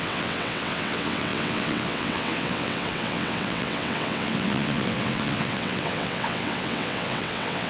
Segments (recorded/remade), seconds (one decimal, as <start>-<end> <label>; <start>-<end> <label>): 0.0-7.7 remade